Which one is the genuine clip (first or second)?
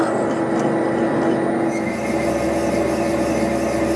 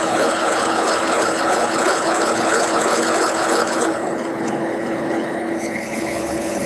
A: first